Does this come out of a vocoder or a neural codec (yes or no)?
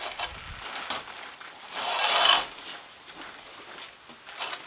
no